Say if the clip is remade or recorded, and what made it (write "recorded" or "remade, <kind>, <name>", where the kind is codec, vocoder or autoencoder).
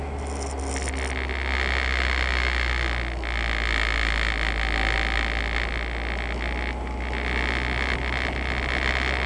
recorded